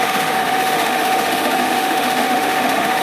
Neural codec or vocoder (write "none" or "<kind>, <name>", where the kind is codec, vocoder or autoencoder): autoencoder, DAC-VAE